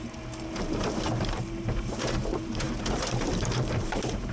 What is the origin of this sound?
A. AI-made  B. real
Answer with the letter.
A